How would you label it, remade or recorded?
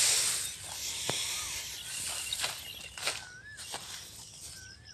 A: recorded